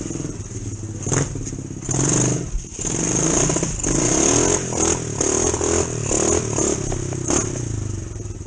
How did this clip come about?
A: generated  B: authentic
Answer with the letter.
B